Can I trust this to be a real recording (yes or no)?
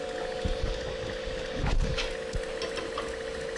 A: yes